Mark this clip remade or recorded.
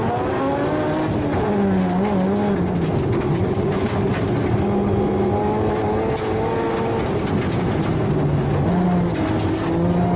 recorded